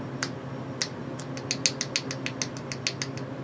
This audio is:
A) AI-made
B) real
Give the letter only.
B